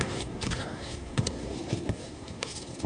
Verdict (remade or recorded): remade